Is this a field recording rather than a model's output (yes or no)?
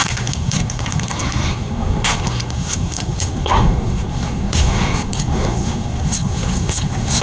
no